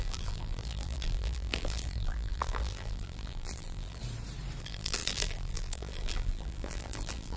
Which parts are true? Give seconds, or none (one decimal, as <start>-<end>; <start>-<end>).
4.0-4.6